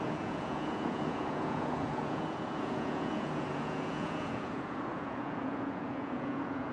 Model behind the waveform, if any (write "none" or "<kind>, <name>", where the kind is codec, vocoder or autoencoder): vocoder, Vocos